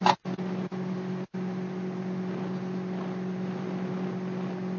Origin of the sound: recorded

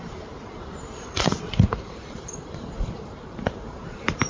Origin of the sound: remade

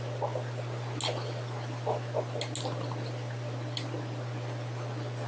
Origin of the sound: recorded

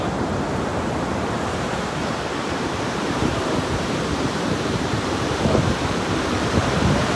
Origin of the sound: remade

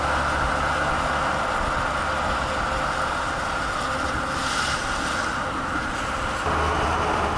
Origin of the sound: recorded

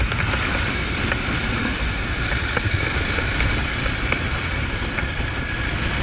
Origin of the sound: remade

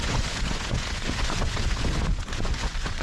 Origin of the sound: remade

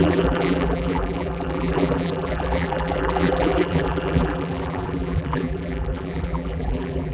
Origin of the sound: remade